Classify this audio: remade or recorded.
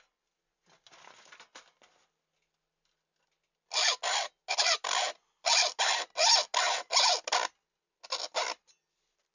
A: recorded